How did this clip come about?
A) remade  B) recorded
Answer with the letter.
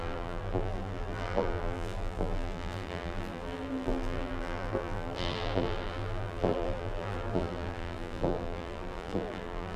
A